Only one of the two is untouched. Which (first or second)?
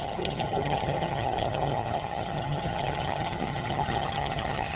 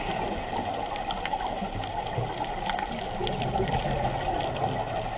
second